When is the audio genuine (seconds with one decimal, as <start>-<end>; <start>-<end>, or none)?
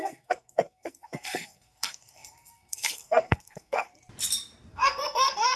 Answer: 3.9-4.7